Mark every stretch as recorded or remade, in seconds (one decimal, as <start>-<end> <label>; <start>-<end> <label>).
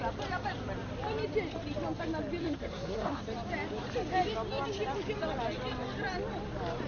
0.0-2.4 recorded; 2.4-3.2 remade; 3.2-6.9 recorded